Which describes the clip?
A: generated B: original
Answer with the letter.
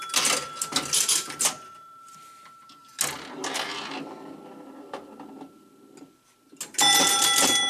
B